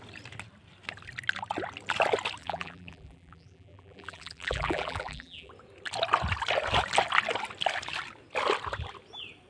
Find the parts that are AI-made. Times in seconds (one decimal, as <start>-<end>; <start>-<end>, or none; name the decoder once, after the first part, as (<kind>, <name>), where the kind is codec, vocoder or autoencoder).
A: 2.4-5.5 (vocoder, BigVGAN v2)